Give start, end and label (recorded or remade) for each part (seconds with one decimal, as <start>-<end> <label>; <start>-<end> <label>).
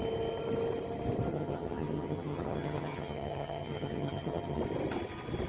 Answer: 0.0-1.3 recorded; 1.3-4.6 remade; 4.6-5.5 recorded